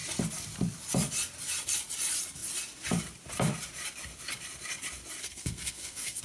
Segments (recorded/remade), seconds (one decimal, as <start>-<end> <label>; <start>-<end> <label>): 0.0-5.2 recorded; 5.2-6.2 remade